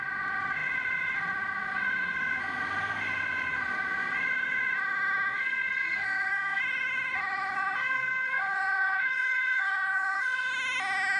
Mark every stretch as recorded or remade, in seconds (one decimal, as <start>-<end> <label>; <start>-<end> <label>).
0.0-5.3 recorded; 5.3-6.6 remade; 6.6-7.8 recorded; 7.8-10.5 remade; 10.5-11.2 recorded